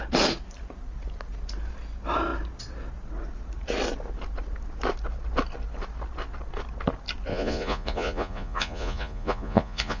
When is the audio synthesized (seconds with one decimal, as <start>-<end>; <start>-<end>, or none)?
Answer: 7.3-10.0